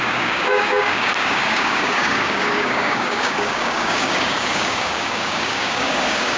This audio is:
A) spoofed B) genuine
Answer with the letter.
A